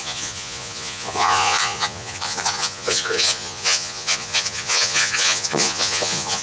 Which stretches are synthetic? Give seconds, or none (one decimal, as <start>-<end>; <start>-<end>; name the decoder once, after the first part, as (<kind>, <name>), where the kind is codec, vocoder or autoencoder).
0.0-6.4 (vocoder, Vocos)